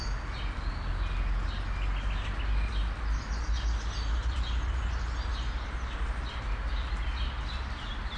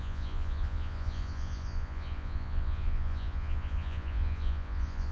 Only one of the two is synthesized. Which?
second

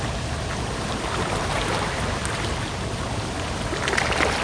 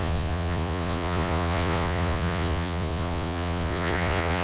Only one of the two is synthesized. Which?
second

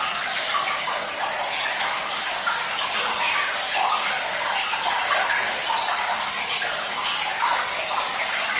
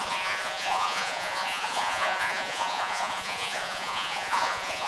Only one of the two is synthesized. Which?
second